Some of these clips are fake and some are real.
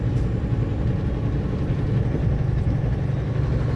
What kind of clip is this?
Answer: fake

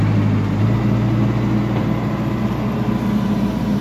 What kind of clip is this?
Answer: real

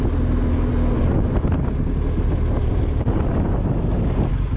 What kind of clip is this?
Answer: real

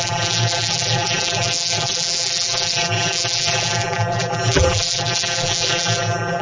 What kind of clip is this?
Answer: fake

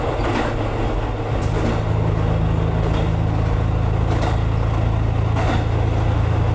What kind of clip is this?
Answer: real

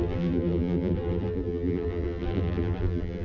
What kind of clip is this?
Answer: fake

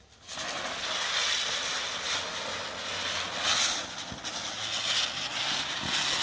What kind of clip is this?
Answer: real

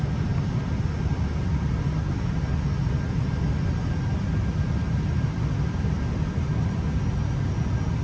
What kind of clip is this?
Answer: real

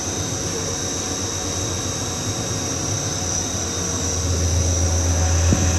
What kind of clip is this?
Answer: real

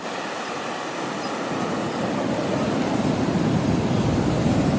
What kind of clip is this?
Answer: fake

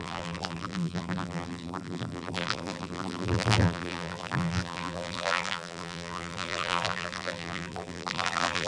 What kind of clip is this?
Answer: fake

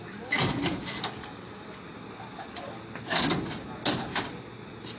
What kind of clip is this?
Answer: real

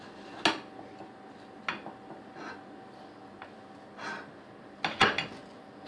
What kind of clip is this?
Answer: real